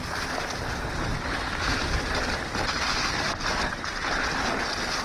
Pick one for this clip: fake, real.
real